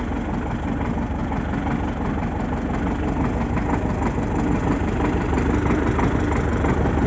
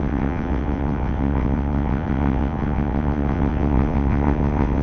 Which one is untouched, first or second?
first